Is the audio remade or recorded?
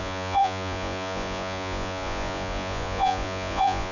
remade